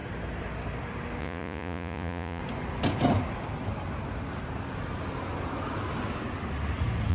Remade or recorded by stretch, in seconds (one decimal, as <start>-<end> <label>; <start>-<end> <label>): 0.0-1.2 recorded; 1.2-2.4 remade; 2.4-7.1 recorded